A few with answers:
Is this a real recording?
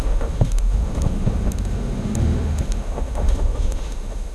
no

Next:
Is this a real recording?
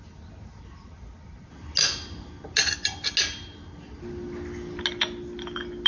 yes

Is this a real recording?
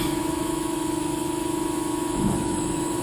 no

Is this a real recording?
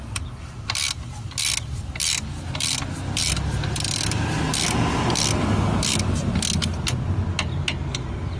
yes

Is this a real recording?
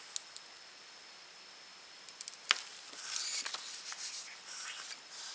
yes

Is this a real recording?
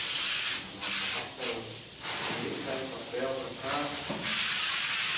yes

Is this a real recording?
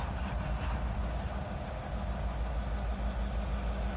yes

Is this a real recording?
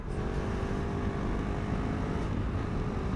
yes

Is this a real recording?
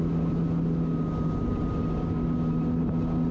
yes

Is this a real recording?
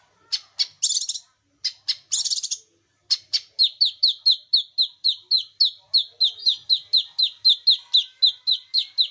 yes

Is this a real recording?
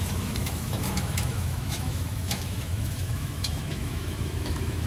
no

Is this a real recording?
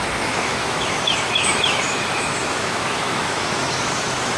no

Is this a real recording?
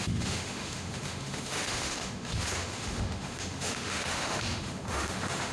no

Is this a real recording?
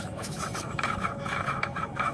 no